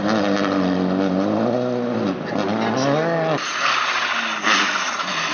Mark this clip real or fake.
real